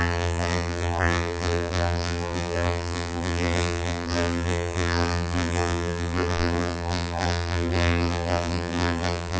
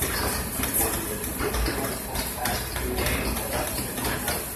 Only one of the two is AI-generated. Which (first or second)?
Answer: first